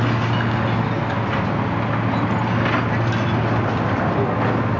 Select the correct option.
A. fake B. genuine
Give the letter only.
B